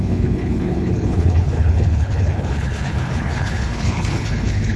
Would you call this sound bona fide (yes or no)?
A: no